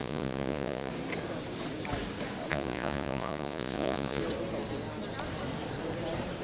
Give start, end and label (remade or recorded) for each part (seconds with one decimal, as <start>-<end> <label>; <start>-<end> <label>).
0.0-0.9 remade; 0.9-2.5 recorded; 2.5-4.2 remade; 4.2-6.4 recorded